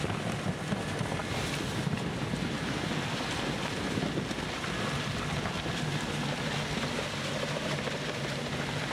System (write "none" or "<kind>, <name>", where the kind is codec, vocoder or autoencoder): none